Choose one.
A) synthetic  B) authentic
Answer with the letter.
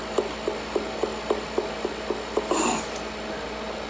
B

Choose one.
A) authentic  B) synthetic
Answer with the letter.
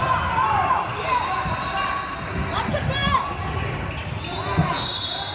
A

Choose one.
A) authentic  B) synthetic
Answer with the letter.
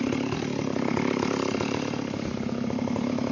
B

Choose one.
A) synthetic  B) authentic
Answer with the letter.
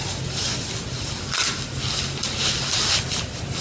B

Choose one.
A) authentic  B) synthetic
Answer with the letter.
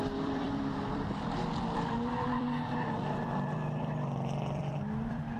B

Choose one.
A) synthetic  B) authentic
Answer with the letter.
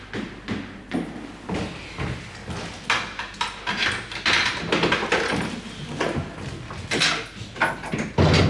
B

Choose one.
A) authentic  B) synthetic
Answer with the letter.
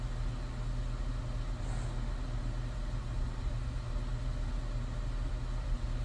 A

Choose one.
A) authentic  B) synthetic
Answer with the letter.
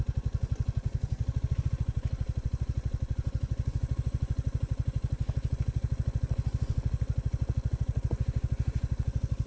A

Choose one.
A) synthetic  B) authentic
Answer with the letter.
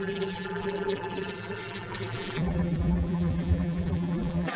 A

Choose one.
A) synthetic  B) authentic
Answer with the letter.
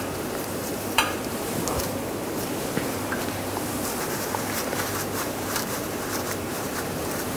A